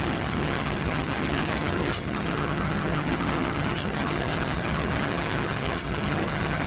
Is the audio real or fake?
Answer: fake